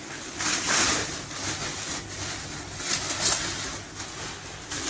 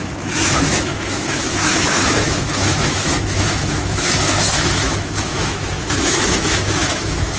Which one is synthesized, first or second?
second